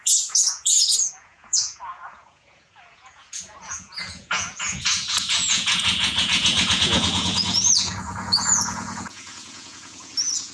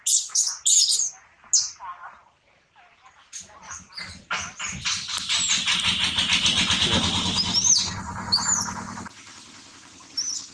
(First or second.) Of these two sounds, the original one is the second